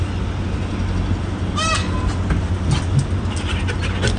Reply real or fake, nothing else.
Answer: real